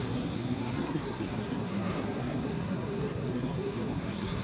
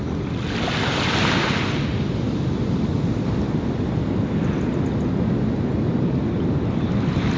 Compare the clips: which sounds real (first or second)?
second